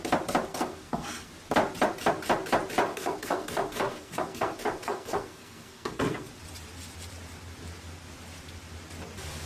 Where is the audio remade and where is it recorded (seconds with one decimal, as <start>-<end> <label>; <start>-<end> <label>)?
0.0-0.5 recorded; 0.5-1.3 remade; 1.3-2.9 recorded; 2.9-6.3 remade; 6.3-9.5 recorded